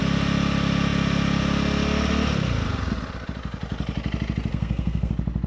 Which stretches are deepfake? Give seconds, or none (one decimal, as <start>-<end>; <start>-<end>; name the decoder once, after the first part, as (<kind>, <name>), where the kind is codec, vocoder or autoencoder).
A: 4.5-5.1 (codec, SNAC)